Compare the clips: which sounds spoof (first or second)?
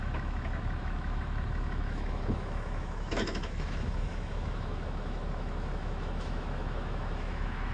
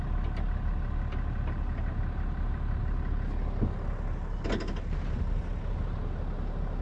first